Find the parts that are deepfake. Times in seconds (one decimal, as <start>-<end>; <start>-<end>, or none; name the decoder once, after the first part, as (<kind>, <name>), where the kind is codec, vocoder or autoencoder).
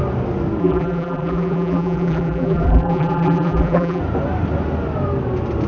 0.6-4.0 (vocoder, BigVGAN v2)